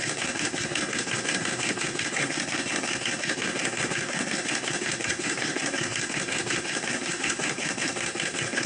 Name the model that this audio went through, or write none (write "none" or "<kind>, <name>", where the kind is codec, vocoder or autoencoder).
codec, SNAC